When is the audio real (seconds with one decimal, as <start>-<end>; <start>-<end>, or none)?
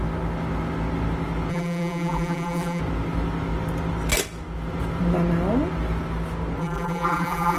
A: 0.0-1.5; 2.8-6.6